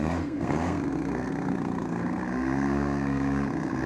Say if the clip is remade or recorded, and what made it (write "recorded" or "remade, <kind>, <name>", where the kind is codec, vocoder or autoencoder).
remade, codec, SNAC